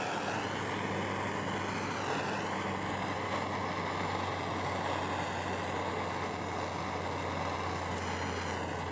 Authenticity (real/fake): real